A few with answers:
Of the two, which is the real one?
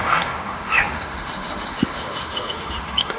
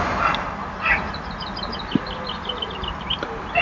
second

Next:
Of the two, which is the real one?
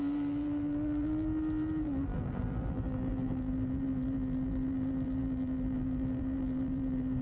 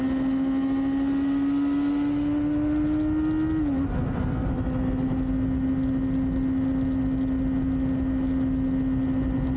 second